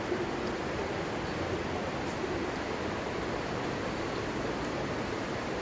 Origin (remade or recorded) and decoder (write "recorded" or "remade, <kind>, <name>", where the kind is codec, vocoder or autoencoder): recorded